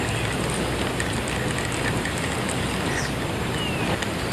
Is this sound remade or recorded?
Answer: recorded